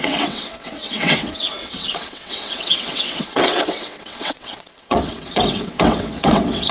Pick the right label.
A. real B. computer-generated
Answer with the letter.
B